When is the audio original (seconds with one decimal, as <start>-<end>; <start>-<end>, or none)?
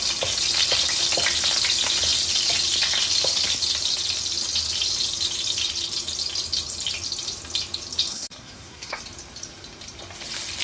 0.0-8.1; 9.0-10.6